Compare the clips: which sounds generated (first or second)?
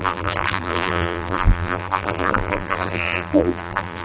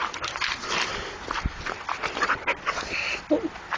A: first